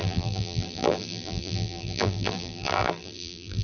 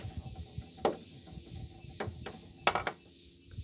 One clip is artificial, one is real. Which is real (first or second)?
second